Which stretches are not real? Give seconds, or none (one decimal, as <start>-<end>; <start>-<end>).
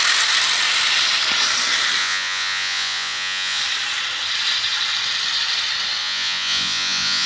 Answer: 2.0-3.6; 6.0-7.3